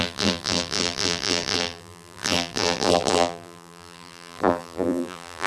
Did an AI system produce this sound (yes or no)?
yes